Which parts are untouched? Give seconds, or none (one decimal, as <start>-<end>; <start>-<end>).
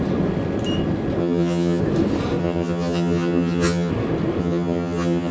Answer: 0.0-1.2; 1.8-2.4; 3.9-4.4